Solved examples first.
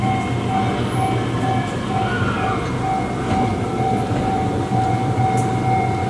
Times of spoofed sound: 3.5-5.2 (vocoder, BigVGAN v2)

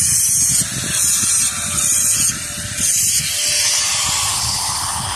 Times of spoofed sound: 4.3-5.2 (codec, HILCodec)

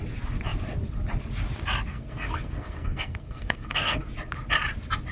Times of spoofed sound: 1.9-4.0 (codec, SNAC)

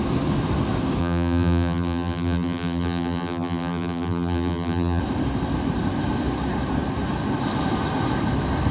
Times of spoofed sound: 1.0-5.0 (vocoder, BigVGAN v2)